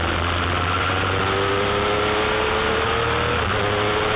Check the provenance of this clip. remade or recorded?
recorded